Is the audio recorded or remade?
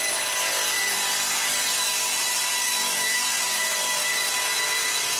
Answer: remade